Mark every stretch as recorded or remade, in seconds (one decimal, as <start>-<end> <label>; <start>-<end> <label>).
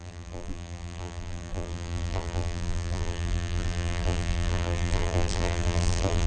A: 0.0-6.3 remade